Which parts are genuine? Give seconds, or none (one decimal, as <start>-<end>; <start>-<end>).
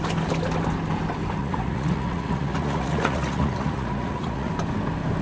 0.0-1.4; 4.5-5.2